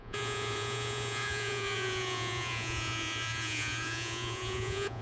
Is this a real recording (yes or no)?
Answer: no